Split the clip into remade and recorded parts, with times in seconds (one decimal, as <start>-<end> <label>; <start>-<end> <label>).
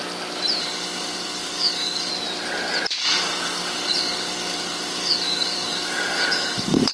0.0-0.6 recorded; 0.6-2.1 remade; 2.1-3.0 recorded; 3.0-6.9 remade